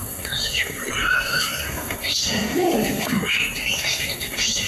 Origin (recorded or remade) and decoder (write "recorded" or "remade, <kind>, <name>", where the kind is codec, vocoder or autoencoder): remade, codec, SNAC